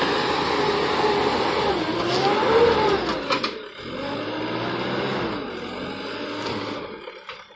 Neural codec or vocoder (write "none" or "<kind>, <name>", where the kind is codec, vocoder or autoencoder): none